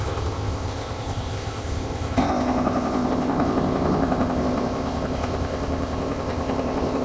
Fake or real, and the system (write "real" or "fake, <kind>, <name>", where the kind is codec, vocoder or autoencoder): fake, codec, ZipCodec